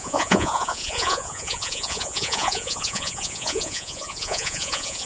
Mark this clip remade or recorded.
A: remade